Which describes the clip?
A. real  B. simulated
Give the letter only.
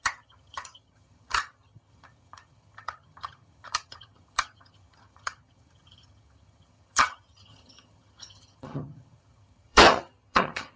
B